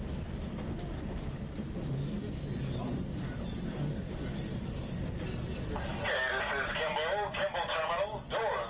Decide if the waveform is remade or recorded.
recorded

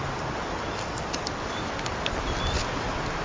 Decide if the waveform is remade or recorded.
recorded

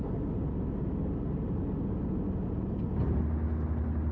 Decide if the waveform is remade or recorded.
recorded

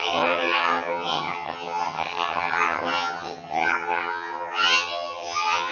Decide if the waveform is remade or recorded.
remade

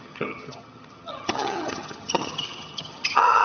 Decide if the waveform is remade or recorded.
remade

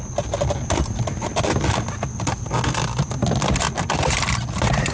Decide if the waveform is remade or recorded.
recorded